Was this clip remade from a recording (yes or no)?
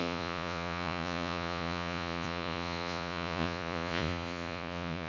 yes